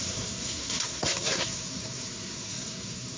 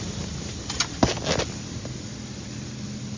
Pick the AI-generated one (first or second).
first